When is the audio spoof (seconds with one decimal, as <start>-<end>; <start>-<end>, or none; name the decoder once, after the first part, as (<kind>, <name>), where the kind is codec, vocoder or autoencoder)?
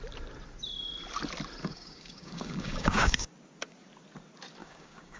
1.6-3.3 (codec, DAC); 4.6-5.2